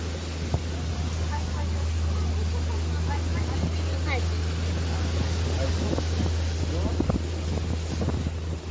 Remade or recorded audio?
recorded